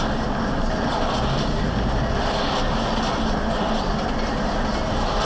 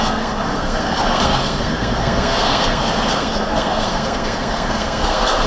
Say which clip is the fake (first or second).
second